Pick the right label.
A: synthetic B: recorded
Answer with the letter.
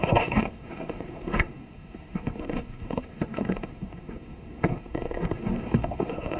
A